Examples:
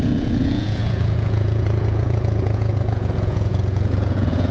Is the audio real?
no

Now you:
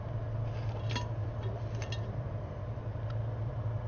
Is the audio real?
yes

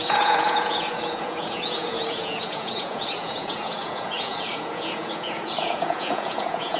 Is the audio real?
no